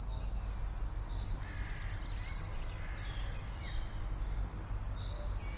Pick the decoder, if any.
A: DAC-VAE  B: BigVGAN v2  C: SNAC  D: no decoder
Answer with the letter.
D